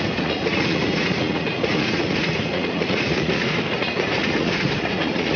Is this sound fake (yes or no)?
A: yes